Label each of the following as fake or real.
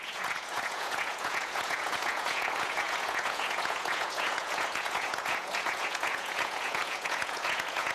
fake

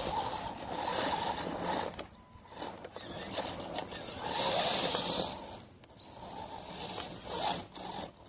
real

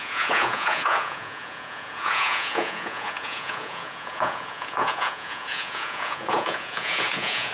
fake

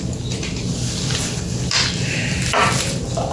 fake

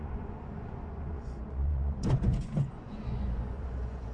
fake